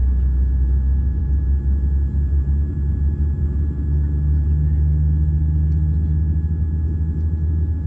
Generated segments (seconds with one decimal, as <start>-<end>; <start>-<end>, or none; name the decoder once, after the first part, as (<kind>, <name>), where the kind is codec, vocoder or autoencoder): none